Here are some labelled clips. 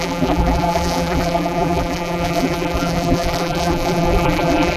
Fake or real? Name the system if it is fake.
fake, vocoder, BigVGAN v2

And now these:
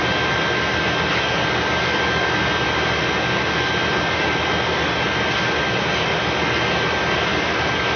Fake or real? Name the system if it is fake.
real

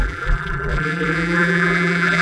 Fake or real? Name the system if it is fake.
fake, vocoder, BigVGAN v2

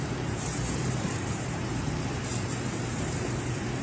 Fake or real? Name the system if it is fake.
fake, vocoder, BigVGAN v2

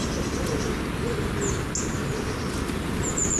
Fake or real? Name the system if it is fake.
real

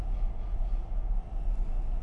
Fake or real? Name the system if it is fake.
real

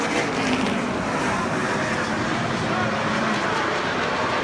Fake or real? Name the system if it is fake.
fake, vocoder, BigVGAN v2